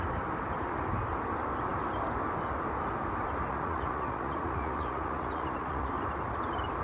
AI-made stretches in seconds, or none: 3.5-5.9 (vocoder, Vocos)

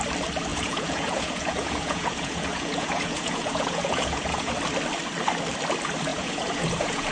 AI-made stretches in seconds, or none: 0.5-4.5 (vocoder, Vocos); 6.1-7.1

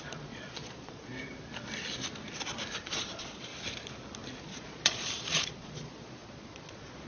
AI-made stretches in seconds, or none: 0.0-1.1 (vocoder, Vocos); 2.8-3.5; 4.4-7.1

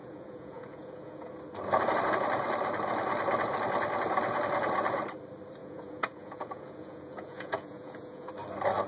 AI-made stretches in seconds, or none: 0.0-1.4 (vocoder, Vocos); 5.6-8.3